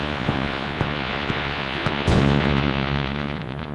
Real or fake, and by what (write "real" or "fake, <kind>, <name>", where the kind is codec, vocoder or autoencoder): fake, vocoder, Vocos